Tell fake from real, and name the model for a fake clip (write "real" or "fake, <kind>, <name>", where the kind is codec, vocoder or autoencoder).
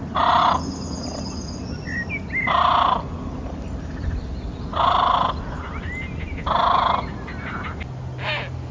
real